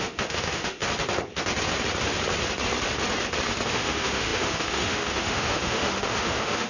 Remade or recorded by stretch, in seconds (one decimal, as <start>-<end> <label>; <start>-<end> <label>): 0.0-0.8 remade; 0.8-3.7 recorded; 3.7-6.7 remade